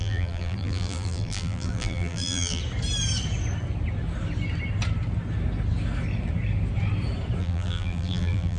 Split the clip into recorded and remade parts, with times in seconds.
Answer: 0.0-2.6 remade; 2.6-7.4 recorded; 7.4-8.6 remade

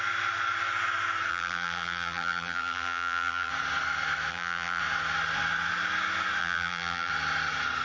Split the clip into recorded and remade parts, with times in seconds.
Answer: 0.0-1.3 recorded; 1.3-3.5 remade; 3.5-4.3 recorded; 4.3-4.8 remade; 4.8-6.4 recorded; 6.4-7.1 remade; 7.1-7.8 recorded

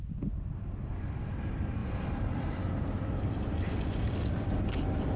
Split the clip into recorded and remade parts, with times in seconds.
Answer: 0.0-0.9 remade; 0.9-1.8 recorded; 1.8-5.2 remade

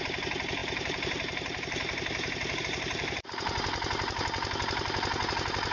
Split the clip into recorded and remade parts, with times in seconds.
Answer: 0.0-3.7 remade; 3.7-5.3 recorded; 5.3-5.7 remade

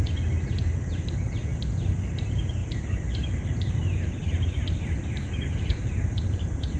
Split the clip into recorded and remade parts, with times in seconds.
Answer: 0.0-0.6 recorded; 0.6-1.4 remade; 1.4-2.1 recorded; 2.1-3.8 remade; 3.8-5.2 recorded; 5.2-6.8 remade

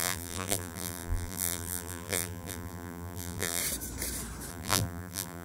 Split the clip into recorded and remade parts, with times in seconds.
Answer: 0.0-3.6 remade; 3.6-4.5 recorded; 4.5-5.4 remade

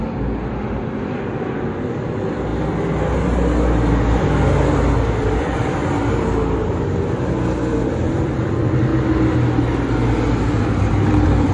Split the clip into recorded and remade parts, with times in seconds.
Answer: 0.0-2.5 remade; 2.5-5.1 recorded; 5.1-5.8 remade; 5.8-8.1 recorded; 8.1-8.9 remade; 8.9-10.9 recorded; 10.9-11.5 remade